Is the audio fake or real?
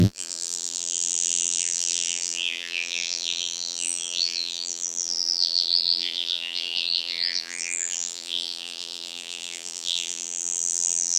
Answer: fake